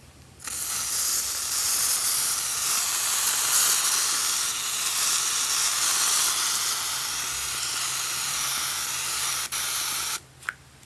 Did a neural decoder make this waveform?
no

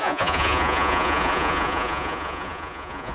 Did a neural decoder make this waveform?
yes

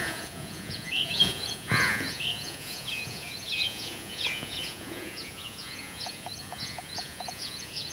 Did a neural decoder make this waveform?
yes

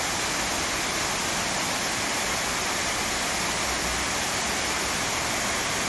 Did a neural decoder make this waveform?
no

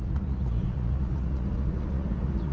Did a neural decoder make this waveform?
yes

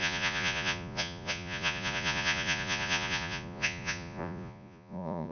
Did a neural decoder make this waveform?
yes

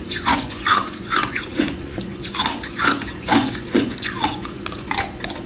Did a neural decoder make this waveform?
yes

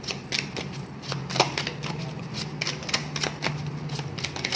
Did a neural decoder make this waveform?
no